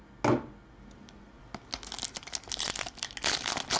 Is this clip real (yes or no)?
yes